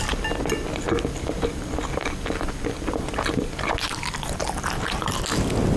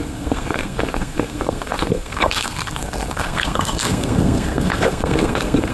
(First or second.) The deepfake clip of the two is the second